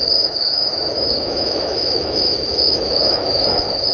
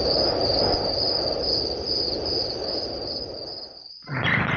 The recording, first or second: second